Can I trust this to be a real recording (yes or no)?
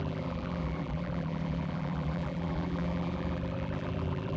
no